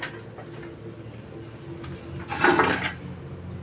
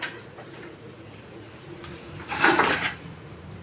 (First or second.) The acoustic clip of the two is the first